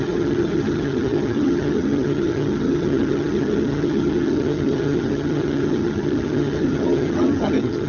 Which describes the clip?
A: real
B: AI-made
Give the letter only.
B